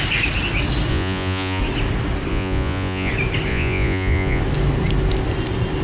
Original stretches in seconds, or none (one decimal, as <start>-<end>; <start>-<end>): 0.0-0.9; 1.6-2.3; 3.1-3.5; 4.4-5.8